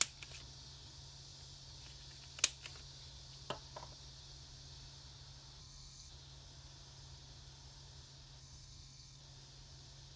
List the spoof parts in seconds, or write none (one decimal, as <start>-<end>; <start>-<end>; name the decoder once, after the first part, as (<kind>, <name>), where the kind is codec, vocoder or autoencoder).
5.6-6.1 (codec, SNAC); 8.4-9.2